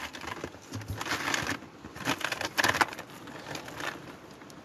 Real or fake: real